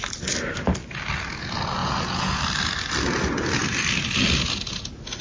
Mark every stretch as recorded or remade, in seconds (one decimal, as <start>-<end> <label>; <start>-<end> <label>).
0.0-1.8 recorded; 1.8-2.4 remade; 2.4-5.2 recorded